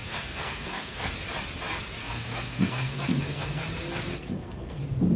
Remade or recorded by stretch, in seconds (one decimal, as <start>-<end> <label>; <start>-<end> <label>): 0.0-1.1 remade; 1.1-2.0 recorded; 2.0-3.6 remade; 3.6-4.1 recorded; 4.1-4.8 remade; 4.8-5.2 recorded